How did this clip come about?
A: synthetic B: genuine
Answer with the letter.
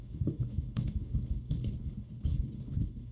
A